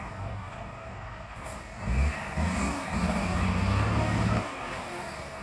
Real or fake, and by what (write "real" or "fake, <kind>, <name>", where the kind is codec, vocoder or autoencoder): fake, codec, DAC